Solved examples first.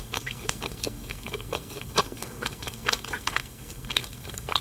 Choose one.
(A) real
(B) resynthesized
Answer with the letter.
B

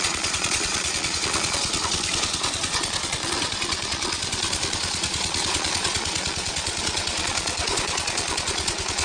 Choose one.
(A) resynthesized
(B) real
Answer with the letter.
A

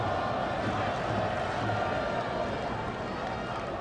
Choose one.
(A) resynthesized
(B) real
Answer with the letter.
B